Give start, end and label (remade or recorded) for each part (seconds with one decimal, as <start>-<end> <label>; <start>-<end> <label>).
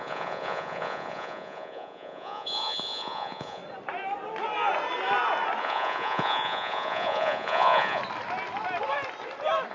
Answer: 0.0-3.6 remade; 3.6-5.6 recorded; 5.6-8.0 remade; 8.0-9.7 recorded